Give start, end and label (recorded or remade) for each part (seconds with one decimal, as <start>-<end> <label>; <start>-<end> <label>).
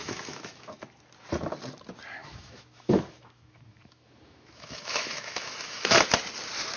0.0-0.8 remade; 0.8-2.2 recorded; 2.2-6.1 remade; 6.1-6.8 recorded